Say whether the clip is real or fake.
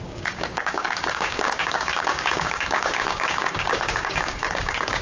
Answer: fake